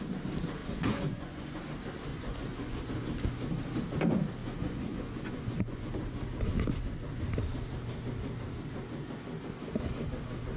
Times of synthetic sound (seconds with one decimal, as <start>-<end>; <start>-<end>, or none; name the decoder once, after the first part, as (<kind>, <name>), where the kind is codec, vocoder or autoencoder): 0.6-1.6 (vocoder, Vocos); 2.1-2.8; 4.4-5.9